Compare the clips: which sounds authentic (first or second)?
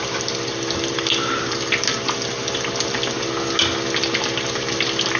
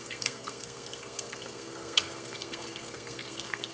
first